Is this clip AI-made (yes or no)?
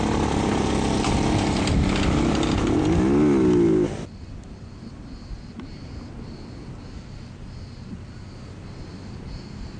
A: no